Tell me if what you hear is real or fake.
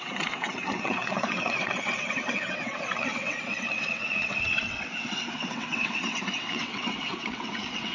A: fake